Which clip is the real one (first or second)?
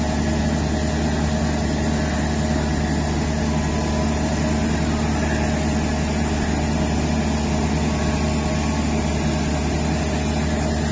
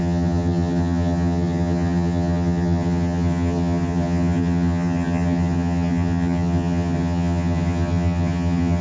first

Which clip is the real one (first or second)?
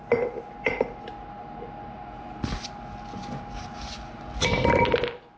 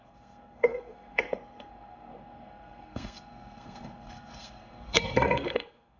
first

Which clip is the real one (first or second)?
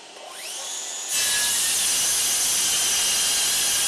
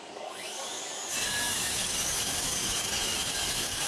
first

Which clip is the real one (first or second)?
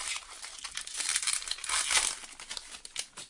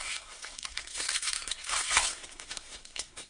first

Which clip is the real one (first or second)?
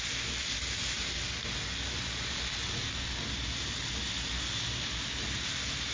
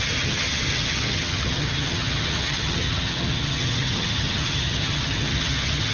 first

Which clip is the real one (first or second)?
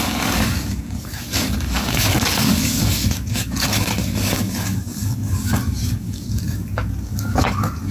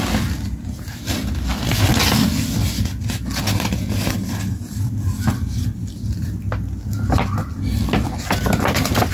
second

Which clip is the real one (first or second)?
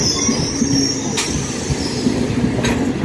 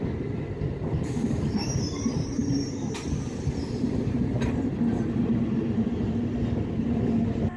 first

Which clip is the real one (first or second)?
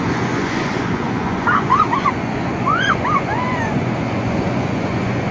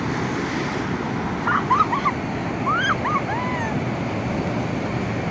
second